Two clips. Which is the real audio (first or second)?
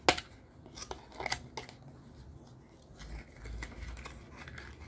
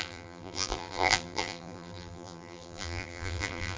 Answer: first